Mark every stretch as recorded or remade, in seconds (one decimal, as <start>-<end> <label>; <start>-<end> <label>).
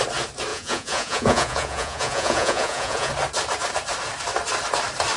0.0-0.5 recorded; 0.5-3.1 remade; 3.1-5.2 recorded